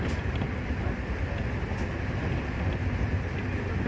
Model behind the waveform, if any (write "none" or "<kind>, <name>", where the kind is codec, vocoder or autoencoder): none